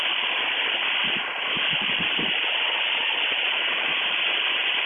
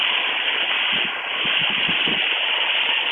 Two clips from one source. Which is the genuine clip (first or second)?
second